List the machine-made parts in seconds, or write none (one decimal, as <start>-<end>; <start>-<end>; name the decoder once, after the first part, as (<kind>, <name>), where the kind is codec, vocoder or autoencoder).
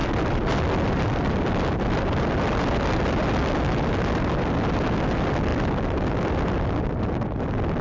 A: none